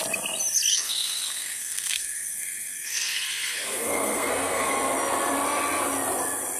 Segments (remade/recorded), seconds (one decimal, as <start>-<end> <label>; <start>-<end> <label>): 0.0-0.7 recorded; 0.7-4.7 remade; 4.7-6.6 recorded